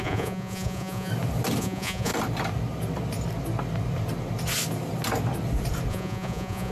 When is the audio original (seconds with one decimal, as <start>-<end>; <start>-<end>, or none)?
1.1-1.6; 2.1-5.9

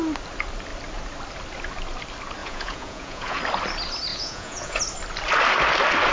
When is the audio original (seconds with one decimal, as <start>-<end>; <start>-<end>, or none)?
0.0-2.4; 3.4-4.1; 4.8-6.1

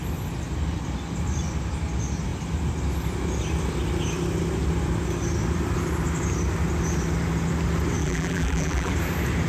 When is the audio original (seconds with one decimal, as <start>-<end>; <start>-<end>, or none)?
0.0-8.0; 8.9-9.5

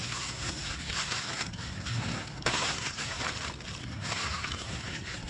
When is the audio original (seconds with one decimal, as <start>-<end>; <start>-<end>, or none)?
3.2-3.8

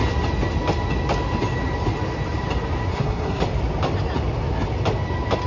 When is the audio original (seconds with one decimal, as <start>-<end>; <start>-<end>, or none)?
0.0-2.9; 3.4-5.5